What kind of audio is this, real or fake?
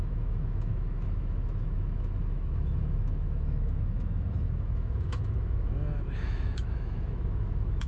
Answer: fake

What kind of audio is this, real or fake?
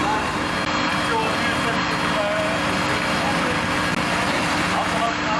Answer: real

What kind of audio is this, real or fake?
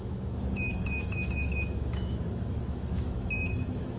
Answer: fake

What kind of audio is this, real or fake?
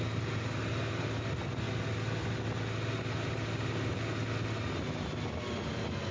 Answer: real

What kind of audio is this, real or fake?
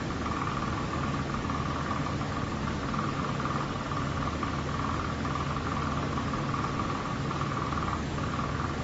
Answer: real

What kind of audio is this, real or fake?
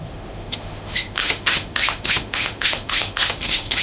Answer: fake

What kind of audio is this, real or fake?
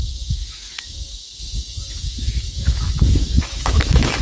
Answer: fake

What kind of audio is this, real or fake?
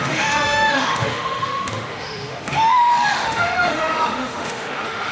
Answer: fake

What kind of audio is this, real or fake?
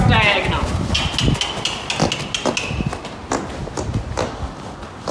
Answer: real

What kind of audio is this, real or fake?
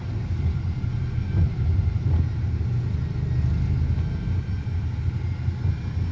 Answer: real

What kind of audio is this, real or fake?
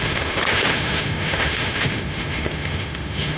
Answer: fake